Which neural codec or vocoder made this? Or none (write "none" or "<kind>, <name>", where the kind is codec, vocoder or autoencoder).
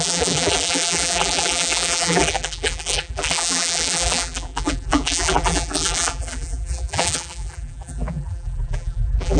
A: vocoder, BigVGAN v2